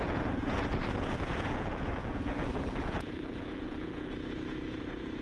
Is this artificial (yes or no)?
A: yes